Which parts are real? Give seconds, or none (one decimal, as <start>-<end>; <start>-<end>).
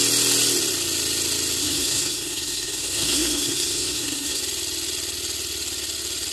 0.0-1.6; 4.4-6.3